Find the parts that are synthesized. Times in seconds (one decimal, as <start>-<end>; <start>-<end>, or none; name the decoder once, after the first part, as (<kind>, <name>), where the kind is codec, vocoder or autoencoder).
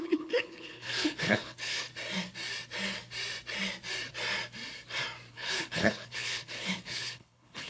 0.0-1.9 (codec, HILCodec); 5.3-7.7